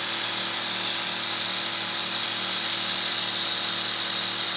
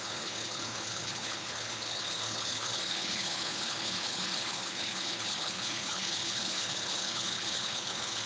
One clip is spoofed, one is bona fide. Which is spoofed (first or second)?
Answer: second